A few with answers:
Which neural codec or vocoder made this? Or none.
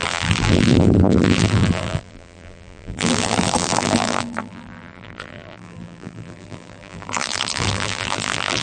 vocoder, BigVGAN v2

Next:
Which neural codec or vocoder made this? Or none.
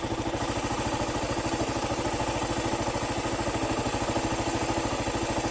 none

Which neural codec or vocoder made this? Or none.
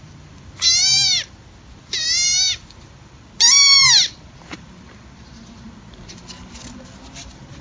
vocoder, BigVGAN v2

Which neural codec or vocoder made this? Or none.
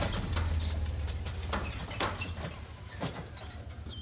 none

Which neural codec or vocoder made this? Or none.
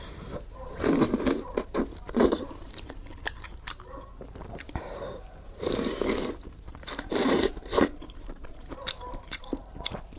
vocoder, BigVGAN v2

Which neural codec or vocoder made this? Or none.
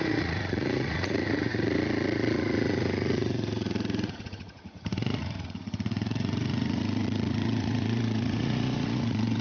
vocoder, Vocos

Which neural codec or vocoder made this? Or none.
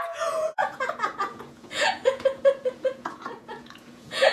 vocoder, Vocos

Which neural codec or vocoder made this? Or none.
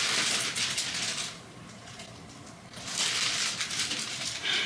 vocoder, BigVGAN v2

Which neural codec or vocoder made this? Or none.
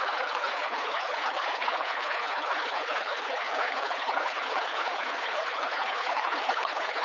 codec, HILCodec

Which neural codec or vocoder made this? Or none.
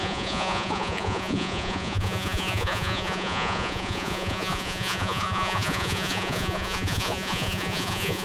vocoder, Vocos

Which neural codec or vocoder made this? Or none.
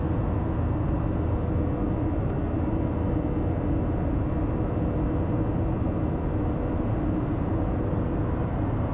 none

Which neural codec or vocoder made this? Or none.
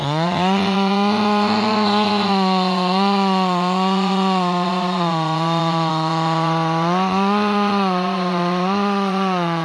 vocoder, Vocos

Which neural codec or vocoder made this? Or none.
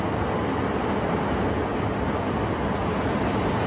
none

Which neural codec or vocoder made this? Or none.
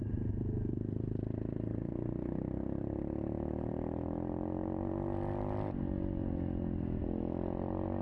none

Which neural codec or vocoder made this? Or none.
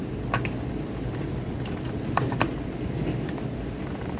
none